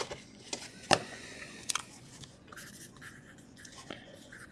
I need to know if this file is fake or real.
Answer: fake